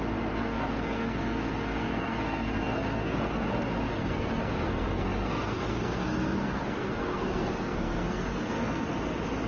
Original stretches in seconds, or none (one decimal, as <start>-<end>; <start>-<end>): 0.0-0.4; 3.4-3.9; 8.9-9.5